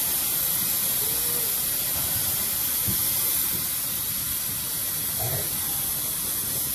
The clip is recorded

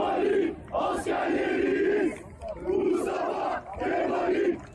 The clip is remade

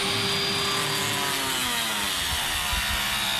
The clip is recorded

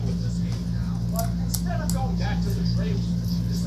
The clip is recorded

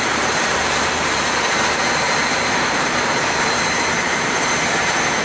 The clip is remade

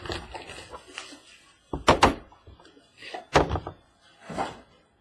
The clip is recorded